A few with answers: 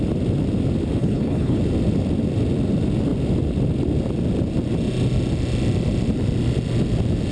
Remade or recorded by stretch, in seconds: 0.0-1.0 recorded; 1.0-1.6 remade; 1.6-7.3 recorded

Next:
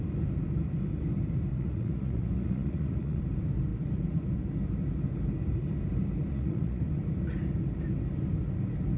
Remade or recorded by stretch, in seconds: 0.0-1.5 recorded; 1.5-3.2 remade; 3.2-6.3 recorded; 6.3-6.8 remade; 6.8-9.0 recorded

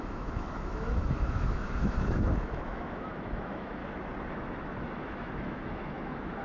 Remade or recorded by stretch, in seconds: 0.0-3.8 remade; 3.8-4.3 recorded; 4.3-6.4 remade

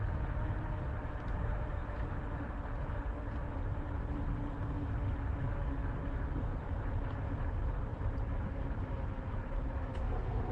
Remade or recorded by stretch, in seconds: 0.0-0.9 recorded; 0.9-2.5 remade; 2.5-7.9 recorded; 7.9-8.4 remade; 8.4-10.5 recorded

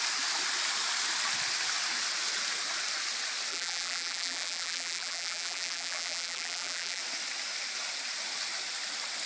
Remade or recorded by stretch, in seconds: 0.0-3.5 recorded; 3.5-7.0 remade; 7.0-9.3 recorded

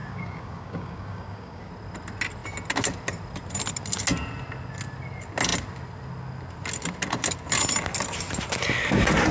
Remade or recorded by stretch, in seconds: 0.0-1.7 remade; 1.7-9.3 recorded

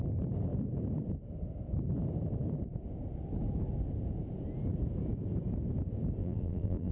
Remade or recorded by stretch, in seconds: 0.0-6.2 recorded; 6.2-6.9 remade

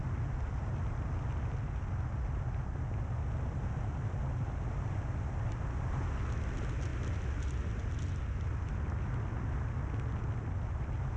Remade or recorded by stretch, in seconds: 0.0-11.2 recorded